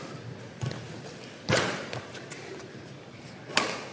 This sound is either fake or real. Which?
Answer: real